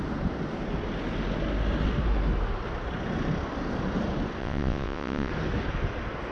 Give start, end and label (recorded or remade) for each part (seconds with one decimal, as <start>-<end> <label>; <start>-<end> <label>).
0.0-4.4 recorded; 4.4-5.3 remade; 5.3-6.3 recorded